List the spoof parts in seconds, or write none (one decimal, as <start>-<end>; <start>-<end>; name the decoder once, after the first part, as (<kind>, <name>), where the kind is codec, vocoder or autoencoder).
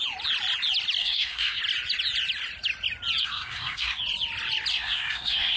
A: 1.0-1.6 (codec, SNAC); 3.2-4.0; 4.7-5.6